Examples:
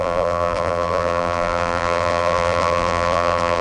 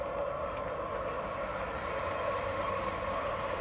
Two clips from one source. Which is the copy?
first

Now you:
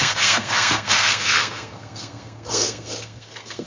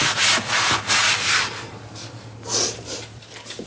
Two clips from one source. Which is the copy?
first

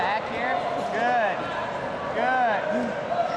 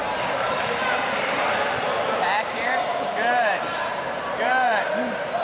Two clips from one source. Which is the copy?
second